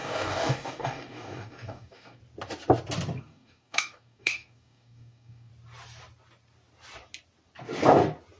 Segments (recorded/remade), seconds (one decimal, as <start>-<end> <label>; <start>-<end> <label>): 0.0-2.2 remade; 2.2-3.2 recorded; 3.2-5.5 remade; 5.5-8.4 recorded